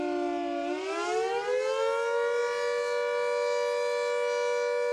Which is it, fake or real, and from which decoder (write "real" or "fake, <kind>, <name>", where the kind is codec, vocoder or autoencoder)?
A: real